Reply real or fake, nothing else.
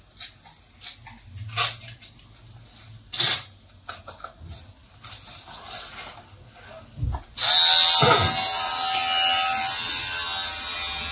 real